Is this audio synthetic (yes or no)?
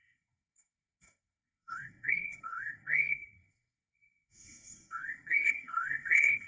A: yes